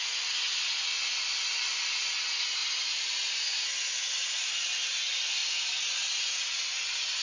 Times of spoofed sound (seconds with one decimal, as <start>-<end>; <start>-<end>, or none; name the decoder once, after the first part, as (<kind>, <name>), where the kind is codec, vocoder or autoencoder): none